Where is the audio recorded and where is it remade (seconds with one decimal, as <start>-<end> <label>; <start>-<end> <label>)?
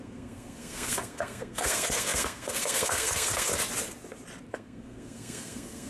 0.0-3.5 remade; 3.5-4.5 recorded; 4.5-5.9 remade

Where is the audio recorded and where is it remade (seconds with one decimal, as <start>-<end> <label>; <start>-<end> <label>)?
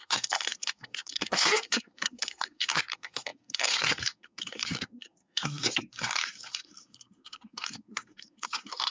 0.0-8.9 remade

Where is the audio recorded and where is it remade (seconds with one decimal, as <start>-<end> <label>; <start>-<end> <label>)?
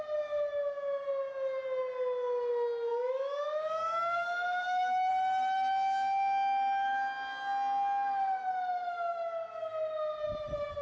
0.0-2.9 recorded; 2.9-5.1 remade; 5.1-10.8 recorded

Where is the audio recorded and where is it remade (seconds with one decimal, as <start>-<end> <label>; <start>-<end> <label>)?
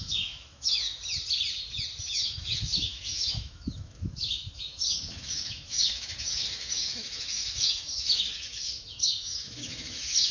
0.0-1.0 remade; 1.0-2.1 recorded; 2.1-10.3 remade